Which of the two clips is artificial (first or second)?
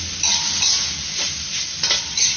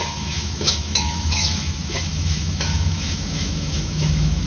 second